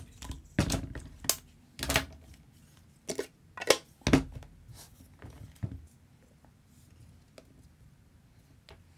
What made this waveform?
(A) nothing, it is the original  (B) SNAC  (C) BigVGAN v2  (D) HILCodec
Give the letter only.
A